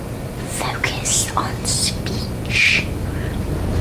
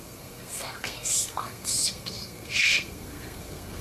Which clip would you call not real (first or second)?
second